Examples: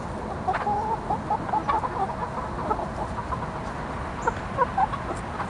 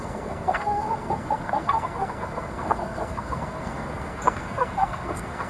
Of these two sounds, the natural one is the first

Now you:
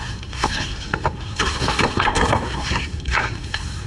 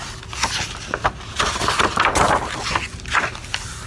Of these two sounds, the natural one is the second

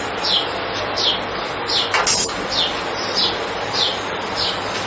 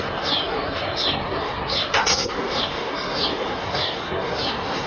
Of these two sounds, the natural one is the first